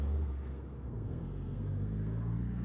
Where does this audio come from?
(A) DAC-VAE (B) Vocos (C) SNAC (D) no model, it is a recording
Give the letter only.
C